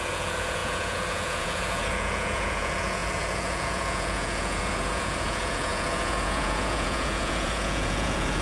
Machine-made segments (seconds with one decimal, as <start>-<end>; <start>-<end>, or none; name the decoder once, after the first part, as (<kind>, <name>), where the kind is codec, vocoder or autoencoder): 0.0-8.4 (vocoder, Vocos)